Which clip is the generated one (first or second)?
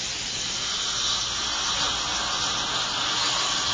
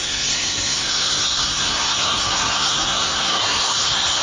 second